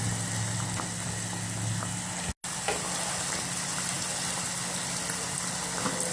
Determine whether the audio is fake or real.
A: real